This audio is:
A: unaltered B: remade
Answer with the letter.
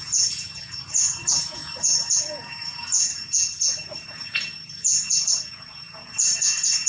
B